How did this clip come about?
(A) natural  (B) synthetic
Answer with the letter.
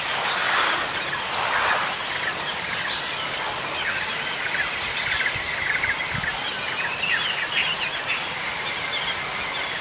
A